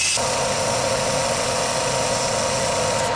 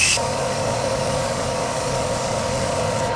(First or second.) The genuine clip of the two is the first